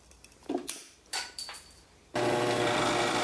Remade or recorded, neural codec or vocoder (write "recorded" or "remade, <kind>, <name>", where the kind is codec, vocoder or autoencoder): remade, vocoder, BigVGAN v2